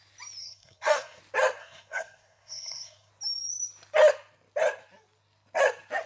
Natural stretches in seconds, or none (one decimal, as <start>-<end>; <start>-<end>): 0.0-0.4; 1.2-1.6; 3.1-6.1